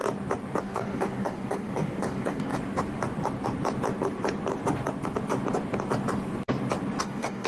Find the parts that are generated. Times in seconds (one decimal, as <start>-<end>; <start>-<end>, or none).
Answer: 0.6-2.5; 7.0-7.5